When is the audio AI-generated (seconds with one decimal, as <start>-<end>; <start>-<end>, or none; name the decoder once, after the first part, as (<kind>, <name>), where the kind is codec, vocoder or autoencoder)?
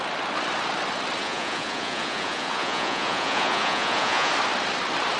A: 1.2-4.3 (vocoder, Vocos)